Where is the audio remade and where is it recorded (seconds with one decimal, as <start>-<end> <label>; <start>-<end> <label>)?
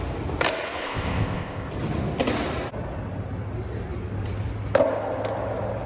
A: 0.0-0.8 recorded; 0.8-1.7 remade; 1.7-5.9 recorded